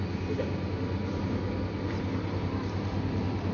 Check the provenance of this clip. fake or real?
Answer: real